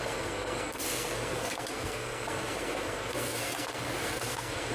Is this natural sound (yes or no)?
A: no